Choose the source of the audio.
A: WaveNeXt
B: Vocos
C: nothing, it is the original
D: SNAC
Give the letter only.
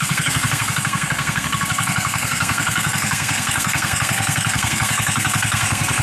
D